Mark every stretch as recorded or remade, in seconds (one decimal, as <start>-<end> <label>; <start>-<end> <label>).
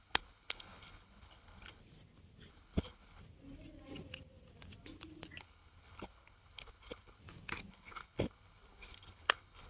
0.0-1.8 remade; 1.8-2.5 recorded; 2.5-3.2 remade; 3.2-5.4 recorded; 5.4-7.2 remade; 7.2-7.7 recorded; 7.7-9.7 remade